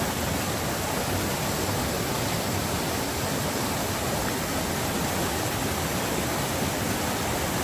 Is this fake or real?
real